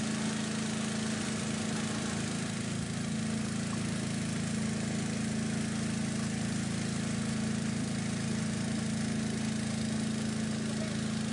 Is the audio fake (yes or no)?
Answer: no